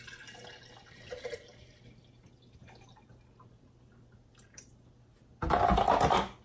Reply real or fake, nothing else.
real